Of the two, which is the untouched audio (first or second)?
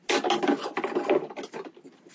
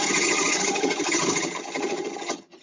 first